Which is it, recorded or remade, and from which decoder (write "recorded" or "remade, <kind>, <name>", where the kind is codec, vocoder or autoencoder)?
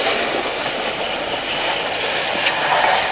recorded